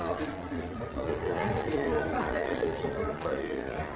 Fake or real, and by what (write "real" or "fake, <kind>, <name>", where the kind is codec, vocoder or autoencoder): fake, vocoder, Vocos